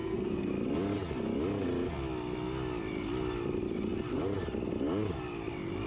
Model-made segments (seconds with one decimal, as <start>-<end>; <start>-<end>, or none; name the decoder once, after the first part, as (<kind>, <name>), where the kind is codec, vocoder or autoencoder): 0.0-0.5 (codec, SNAC)